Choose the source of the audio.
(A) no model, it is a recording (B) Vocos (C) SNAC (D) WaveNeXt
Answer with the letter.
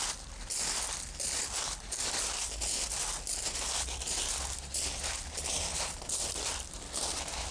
A